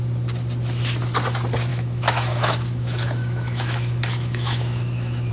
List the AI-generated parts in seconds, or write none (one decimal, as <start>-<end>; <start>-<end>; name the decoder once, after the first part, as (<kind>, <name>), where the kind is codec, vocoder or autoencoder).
1.7-5.3 (autoencoder, DAC-VAE)